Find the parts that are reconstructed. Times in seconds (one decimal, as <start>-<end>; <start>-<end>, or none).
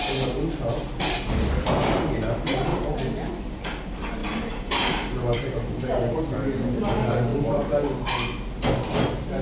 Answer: 2.0-7.3; 8.7-9.4